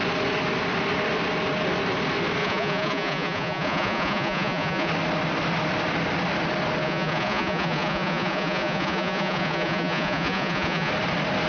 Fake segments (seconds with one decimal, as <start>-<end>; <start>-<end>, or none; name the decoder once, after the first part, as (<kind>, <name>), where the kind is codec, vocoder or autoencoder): 2.4-4.9 (vocoder, Vocos); 6.8-10.9